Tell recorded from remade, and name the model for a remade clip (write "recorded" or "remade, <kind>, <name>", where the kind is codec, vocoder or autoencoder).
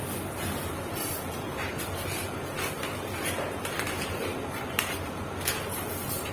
remade, vocoder, BigVGAN v2